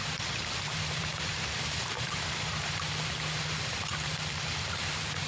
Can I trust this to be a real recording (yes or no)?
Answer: no